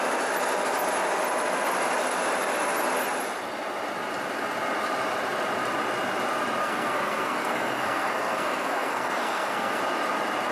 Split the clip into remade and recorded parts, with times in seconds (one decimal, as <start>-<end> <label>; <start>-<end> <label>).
0.0-6.6 recorded; 6.6-9.8 remade; 9.8-10.5 recorded